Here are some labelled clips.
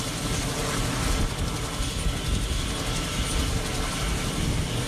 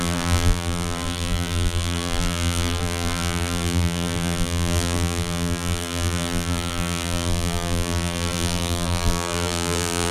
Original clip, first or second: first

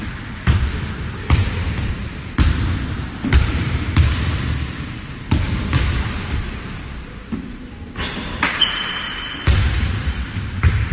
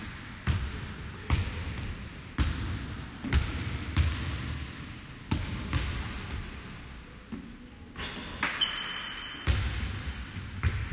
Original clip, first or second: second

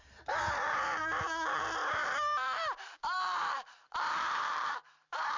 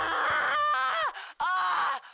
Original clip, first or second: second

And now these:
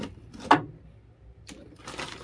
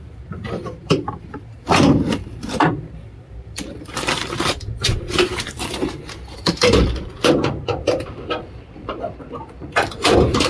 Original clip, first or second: first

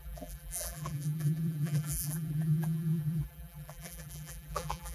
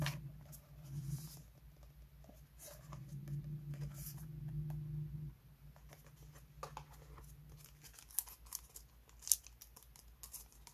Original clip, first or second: second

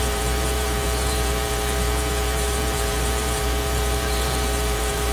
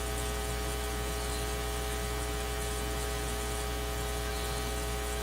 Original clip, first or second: second